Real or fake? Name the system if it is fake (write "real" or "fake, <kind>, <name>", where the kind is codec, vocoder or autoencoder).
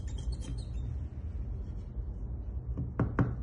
real